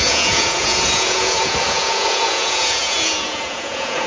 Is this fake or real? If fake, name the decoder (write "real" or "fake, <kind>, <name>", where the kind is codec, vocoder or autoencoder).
fake, vocoder, Vocos